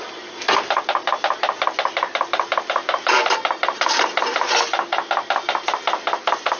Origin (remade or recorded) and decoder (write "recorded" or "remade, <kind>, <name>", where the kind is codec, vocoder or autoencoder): recorded